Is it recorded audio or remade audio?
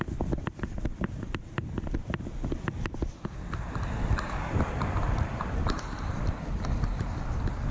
recorded